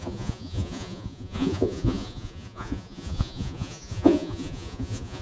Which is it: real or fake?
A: fake